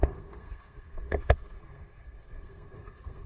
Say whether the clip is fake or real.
fake